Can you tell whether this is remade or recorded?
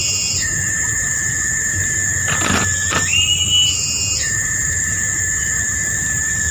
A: recorded